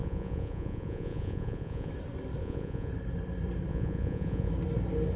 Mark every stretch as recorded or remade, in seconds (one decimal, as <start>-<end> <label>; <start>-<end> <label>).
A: 0.0-1.9 remade; 1.9-2.4 recorded; 2.4-2.9 remade; 2.9-3.7 recorded; 3.7-4.5 remade; 4.5-5.2 recorded